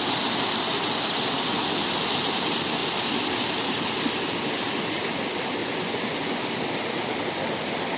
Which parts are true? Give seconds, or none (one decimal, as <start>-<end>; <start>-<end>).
0.0-5.6; 6.4-8.0